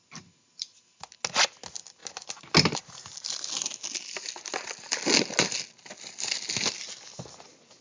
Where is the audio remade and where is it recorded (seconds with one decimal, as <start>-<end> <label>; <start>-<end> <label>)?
0.0-7.8 recorded

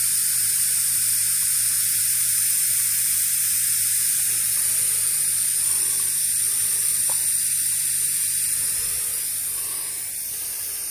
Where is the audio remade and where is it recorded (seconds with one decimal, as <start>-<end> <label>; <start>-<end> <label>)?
0.0-1.2 remade; 1.2-3.6 recorded; 3.6-10.9 remade

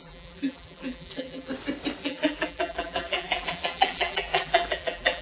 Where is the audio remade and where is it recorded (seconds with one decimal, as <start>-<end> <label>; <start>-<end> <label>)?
0.0-1.5 remade; 1.5-2.0 recorded; 2.0-5.2 remade

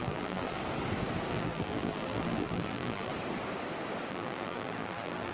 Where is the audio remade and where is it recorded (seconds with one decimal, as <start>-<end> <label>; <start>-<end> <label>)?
0.0-0.6 remade; 0.6-1.3 recorded; 1.3-3.1 remade; 3.1-4.1 recorded; 4.1-5.3 remade